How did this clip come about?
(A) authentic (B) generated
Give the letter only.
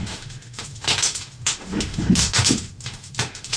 B